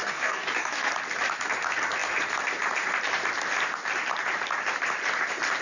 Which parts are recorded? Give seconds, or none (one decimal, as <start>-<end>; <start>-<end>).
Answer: 0.9-5.6